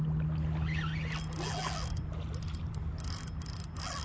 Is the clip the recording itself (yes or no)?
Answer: yes